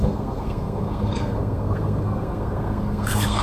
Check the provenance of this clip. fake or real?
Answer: fake